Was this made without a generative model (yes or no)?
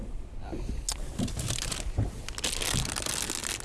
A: yes